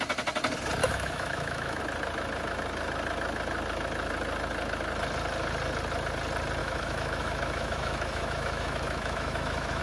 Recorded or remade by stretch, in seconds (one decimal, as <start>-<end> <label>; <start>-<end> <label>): 0.0-0.8 recorded; 0.8-1.8 remade; 1.8-6.6 recorded; 6.6-9.8 remade